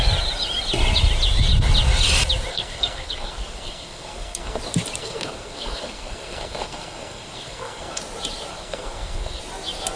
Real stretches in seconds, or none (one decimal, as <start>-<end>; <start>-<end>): 0.0-2.5; 4.6-5.0; 8.0-8.5; 9.4-10.0